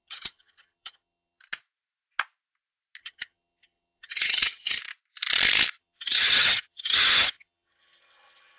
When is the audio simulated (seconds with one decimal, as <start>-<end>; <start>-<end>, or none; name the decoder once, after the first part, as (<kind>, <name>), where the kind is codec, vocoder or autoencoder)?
0.0-1.4 (vocoder, HiFi-GAN); 3.0-4.8; 5.8-8.6